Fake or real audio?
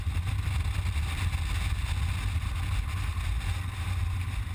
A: real